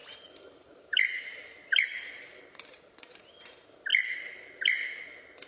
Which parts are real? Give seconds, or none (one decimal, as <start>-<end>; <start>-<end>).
3.3-3.9; 5.0-5.5